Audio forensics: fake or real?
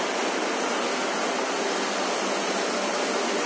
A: real